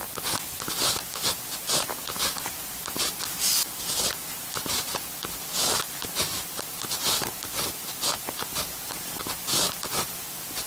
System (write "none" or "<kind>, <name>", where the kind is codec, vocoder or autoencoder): none